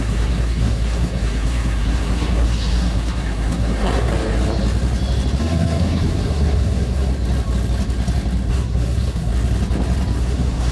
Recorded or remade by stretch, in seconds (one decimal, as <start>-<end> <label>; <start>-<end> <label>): 0.0-4.1 remade; 4.1-5.4 recorded; 5.4-7.1 remade; 7.1-8.5 recorded; 8.5-9.3 remade; 9.3-10.2 recorded; 10.2-10.7 remade